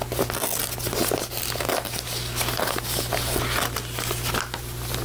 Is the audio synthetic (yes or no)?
no